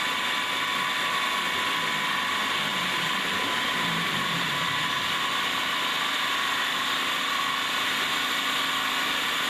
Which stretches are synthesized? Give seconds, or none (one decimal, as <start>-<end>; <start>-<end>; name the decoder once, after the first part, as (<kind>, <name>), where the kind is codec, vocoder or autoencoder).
2.7-4.5 (vocoder, BigVGAN v2)